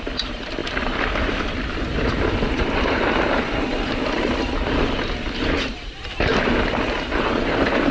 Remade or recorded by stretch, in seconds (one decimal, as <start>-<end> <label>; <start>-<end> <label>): 0.0-0.6 remade; 0.6-1.4 recorded; 1.4-7.9 remade